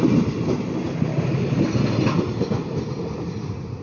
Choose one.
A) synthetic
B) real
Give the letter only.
B